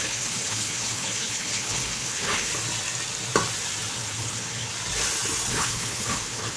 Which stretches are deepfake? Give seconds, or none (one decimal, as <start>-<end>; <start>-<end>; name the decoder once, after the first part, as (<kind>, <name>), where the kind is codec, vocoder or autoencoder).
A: 0.0-2.5 (codec, HILCodec); 3.9-4.7; 5.5-6.6